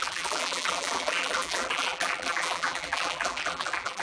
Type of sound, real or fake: fake